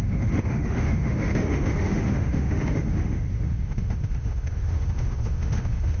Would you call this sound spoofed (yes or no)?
yes